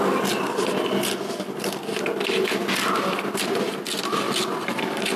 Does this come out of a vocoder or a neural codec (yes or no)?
no